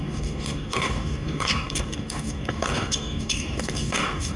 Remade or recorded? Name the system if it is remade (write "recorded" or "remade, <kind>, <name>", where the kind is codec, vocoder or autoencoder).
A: remade, codec, DAC